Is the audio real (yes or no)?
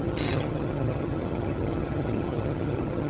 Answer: no